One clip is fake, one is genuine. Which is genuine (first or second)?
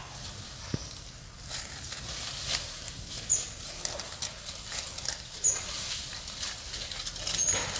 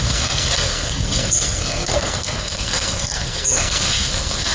first